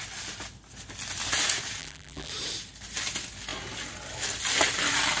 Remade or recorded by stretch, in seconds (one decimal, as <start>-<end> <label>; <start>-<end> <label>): 0.0-1.8 recorded; 1.8-2.3 remade; 2.3-5.2 recorded